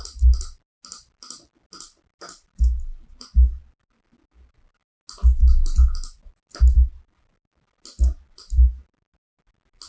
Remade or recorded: recorded